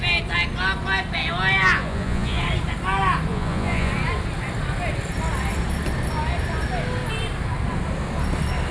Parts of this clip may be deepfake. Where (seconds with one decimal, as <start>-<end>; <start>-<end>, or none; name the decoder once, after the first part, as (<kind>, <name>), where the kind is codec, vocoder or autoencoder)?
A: 1.6-2.4 (vocoder, Vocos); 3.3-3.9